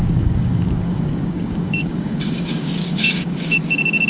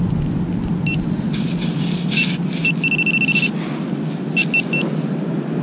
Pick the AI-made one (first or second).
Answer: first